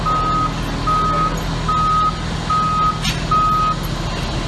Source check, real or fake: real